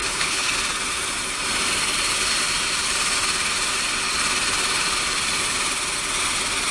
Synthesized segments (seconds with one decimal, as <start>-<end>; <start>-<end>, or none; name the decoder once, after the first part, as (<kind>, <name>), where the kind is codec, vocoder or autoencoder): 0.0-0.5 (codec, HILCodec)